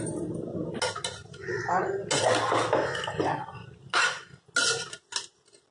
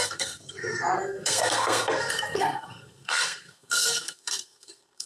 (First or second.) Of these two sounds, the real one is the first